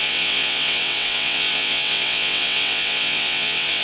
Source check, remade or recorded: remade